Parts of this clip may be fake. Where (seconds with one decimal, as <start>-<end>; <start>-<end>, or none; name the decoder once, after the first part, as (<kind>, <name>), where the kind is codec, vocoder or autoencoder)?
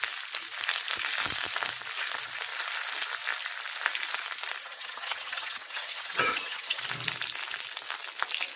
4.6-6.8 (vocoder, HiFi-GAN)